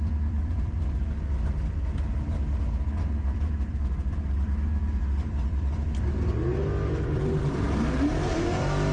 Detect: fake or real fake